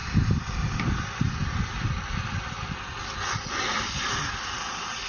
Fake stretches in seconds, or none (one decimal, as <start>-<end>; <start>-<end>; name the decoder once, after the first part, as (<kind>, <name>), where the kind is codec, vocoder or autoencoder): none